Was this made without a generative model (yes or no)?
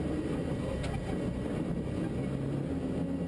yes